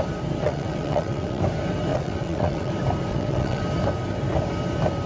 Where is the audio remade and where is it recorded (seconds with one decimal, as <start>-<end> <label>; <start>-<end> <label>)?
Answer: 0.0-0.4 recorded; 0.4-1.4 remade; 1.4-1.9 recorded; 1.9-2.7 remade; 2.7-3.1 recorded; 3.1-3.6 remade; 3.6-5.1 recorded